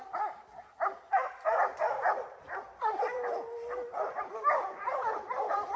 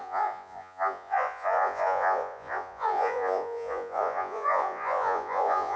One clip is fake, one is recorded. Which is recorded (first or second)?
first